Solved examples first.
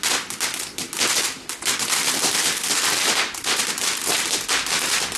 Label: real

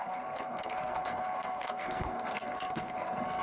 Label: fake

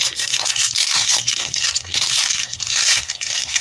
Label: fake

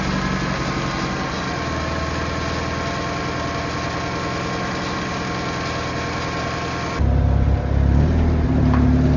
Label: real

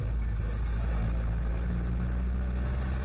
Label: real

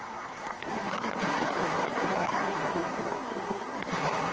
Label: fake